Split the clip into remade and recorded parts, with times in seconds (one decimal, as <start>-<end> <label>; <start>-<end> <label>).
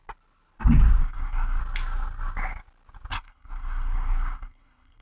0.0-1.0 recorded; 1.0-1.6 remade; 1.6-3.1 recorded; 3.1-5.0 remade